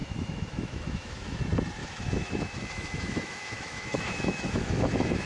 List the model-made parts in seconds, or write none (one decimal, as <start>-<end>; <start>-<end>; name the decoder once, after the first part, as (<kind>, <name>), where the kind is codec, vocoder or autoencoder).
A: 0.0-1.4 (autoencoder, DAC-VAE); 1.8-5.3